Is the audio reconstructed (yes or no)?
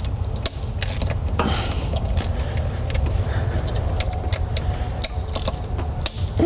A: no